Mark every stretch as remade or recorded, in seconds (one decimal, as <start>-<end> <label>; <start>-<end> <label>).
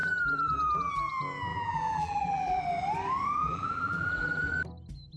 0.0-0.9 remade; 0.9-1.5 recorded; 1.5-2.6 remade; 2.6-3.4 recorded; 3.4-4.5 remade; 4.5-5.2 recorded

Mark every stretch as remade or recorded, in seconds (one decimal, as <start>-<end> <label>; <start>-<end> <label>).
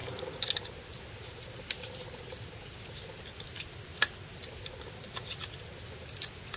0.0-6.6 recorded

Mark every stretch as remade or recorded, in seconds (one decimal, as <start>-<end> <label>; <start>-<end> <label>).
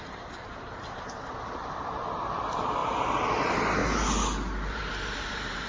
0.0-3.8 remade; 3.8-4.7 recorded; 4.7-5.7 remade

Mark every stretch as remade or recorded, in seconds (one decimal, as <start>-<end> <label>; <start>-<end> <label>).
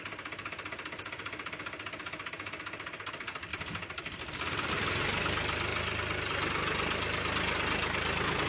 0.0-3.5 recorded; 3.5-4.7 remade; 4.7-8.5 recorded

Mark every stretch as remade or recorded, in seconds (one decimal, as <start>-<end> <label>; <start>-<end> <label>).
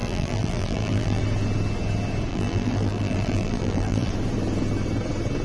0.0-1.2 remade; 1.2-2.3 recorded; 2.3-4.1 remade; 4.1-5.4 recorded